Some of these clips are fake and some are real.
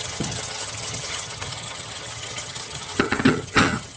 fake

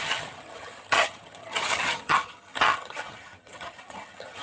fake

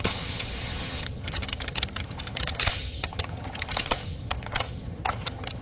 fake